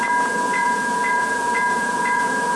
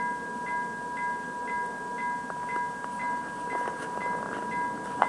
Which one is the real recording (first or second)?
second